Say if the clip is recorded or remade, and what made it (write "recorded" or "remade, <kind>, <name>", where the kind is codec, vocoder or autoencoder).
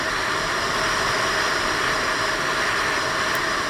recorded